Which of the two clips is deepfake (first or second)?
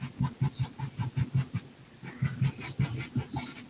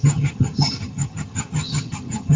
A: second